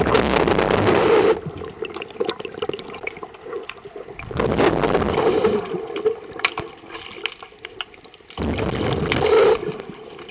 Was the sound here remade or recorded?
recorded